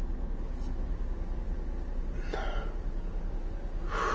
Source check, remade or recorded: recorded